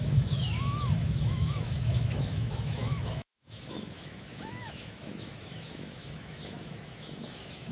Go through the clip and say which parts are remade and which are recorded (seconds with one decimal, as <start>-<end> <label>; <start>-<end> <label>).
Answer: 0.0-7.7 remade